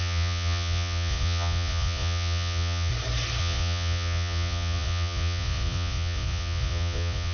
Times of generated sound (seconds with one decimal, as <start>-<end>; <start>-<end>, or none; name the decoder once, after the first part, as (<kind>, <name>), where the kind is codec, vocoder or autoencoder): 0.0-2.9 (vocoder, Vocos); 3.4-7.3